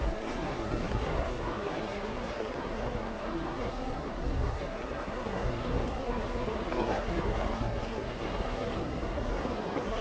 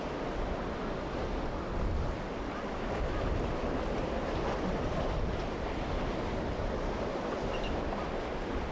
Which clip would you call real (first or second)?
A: second